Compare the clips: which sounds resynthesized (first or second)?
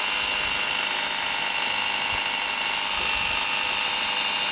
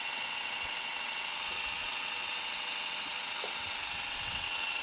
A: second